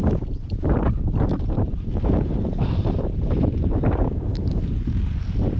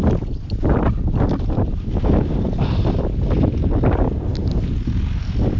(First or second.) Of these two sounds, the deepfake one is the first